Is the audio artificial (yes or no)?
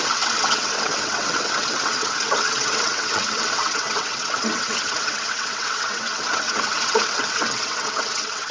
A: yes